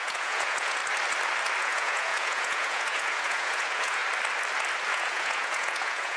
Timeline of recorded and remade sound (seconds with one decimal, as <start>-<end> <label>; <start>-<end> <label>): 0.0-0.8 remade; 0.8-1.6 recorded; 1.6-4.0 remade; 4.0-4.9 recorded; 4.9-6.2 remade